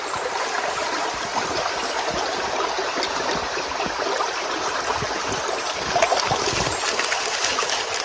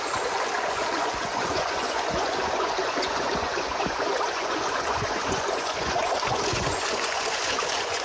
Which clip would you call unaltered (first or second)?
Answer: first